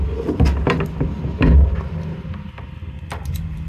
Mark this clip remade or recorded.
recorded